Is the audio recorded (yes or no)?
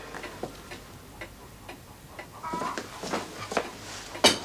yes